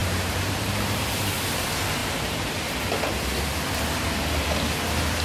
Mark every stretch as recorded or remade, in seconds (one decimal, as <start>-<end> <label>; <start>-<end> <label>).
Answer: 0.0-1.2 remade; 1.2-2.0 recorded; 2.0-2.5 remade; 2.5-5.2 recorded